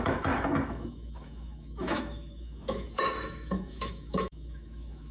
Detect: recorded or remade remade